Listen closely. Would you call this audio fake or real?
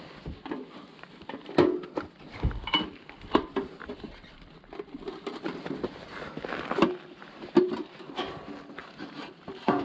real